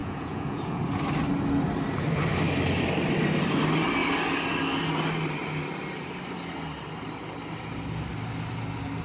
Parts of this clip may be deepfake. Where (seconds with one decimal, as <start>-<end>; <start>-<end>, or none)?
0.0-0.8

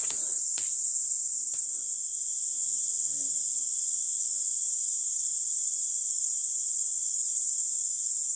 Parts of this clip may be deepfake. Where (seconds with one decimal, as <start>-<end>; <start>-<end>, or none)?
0.0-2.3; 5.0-8.4

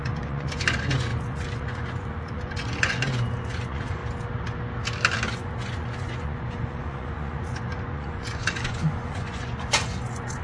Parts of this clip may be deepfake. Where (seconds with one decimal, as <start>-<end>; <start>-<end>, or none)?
0.0-4.0; 5.3-10.4

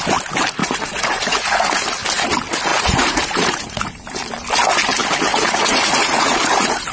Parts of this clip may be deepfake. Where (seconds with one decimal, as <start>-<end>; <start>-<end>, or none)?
0.6-1.7; 2.7-3.8; 5.3-6.9